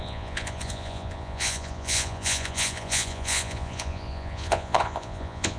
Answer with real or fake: fake